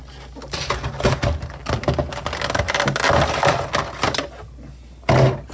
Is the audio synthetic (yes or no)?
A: no